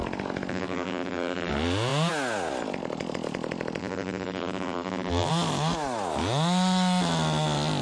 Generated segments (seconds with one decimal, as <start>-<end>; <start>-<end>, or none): 0.5-1.5; 3.8-5.3